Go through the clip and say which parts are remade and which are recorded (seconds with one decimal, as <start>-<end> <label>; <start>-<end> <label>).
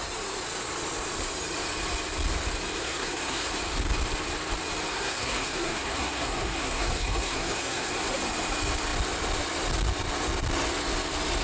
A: 0.0-2.8 recorded; 2.8-3.5 remade; 3.5-4.9 recorded; 4.9-7.9 remade; 7.9-11.4 recorded